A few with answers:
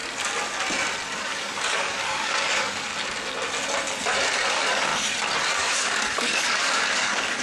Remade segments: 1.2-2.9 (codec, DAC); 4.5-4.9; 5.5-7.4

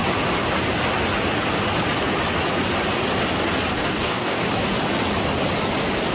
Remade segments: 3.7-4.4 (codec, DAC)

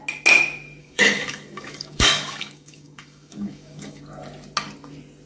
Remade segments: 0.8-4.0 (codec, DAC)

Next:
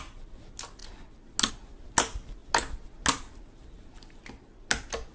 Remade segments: none

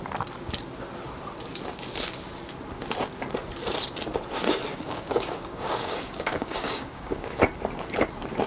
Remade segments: 4.7-7.4 (codec, DAC)

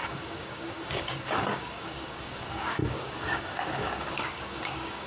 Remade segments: 0.0-5.1 (codec, DAC)

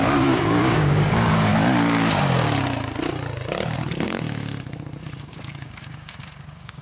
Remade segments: 0.0-1.5 (codec, DAC); 5.2-6.8

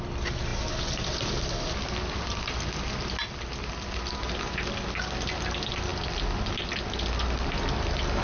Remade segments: none